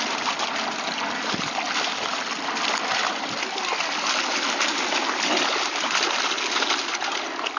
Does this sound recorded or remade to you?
recorded